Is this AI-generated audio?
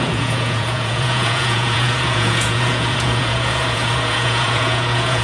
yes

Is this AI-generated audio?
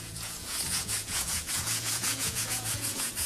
yes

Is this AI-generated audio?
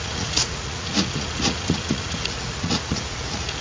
yes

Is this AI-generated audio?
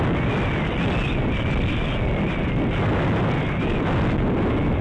no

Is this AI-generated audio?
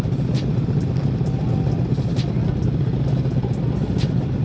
no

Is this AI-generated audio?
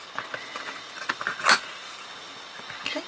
no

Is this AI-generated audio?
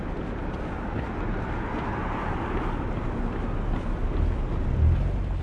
no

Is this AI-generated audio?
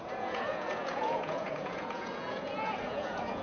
yes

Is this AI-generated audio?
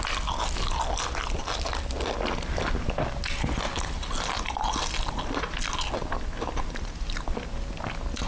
no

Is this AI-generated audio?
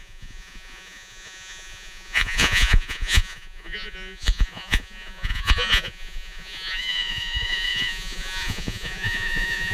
yes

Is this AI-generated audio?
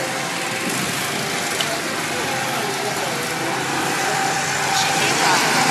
no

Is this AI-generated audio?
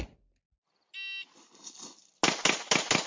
no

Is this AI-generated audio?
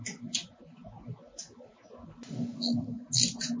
no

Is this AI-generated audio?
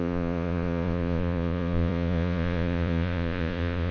yes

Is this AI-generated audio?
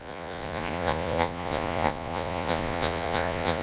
yes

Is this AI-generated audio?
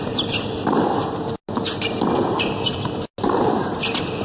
no